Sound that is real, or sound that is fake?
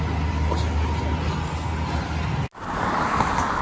real